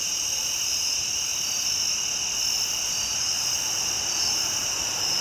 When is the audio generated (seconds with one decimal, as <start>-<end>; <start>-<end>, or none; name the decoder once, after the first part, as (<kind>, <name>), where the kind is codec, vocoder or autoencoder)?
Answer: 0.0-1.3 (vocoder, BigVGAN v2); 2.8-5.2